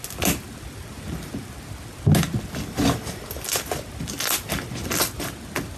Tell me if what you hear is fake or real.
real